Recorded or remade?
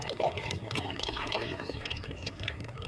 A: remade